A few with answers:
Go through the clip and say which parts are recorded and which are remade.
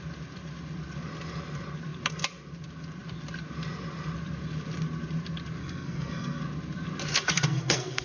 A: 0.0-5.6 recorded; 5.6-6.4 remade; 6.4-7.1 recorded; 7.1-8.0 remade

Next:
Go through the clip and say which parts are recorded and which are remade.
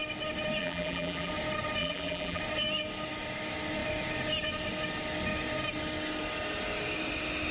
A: 0.0-0.6 recorded; 0.6-1.3 remade; 1.3-1.8 recorded; 1.8-2.4 remade; 2.4-7.5 recorded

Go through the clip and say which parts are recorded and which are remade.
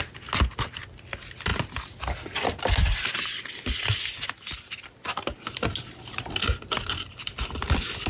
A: 0.0-8.1 recorded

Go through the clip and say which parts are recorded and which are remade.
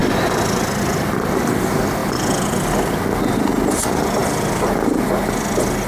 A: 0.0-5.9 recorded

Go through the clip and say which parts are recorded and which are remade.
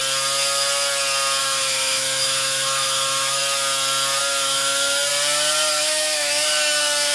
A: 0.0-1.4 recorded; 1.4-3.4 remade; 3.4-4.2 recorded; 4.2-5.1 remade; 5.1-5.7 recorded; 5.7-7.1 remade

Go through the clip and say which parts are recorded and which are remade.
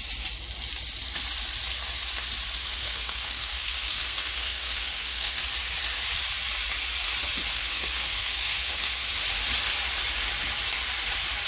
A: 0.0-2.6 recorded; 2.6-5.4 remade; 5.4-7.5 recorded; 7.5-9.0 remade; 9.0-11.5 recorded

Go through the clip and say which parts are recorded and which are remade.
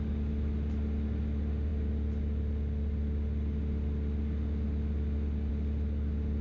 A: 0.0-6.4 recorded